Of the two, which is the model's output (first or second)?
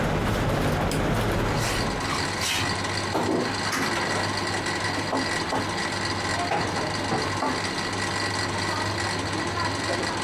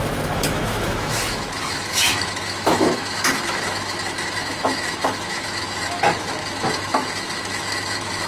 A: second